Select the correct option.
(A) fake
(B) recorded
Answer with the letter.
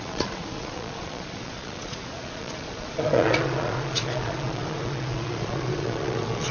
A